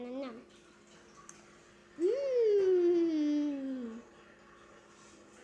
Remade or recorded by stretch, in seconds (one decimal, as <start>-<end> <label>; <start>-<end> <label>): 0.0-5.4 recorded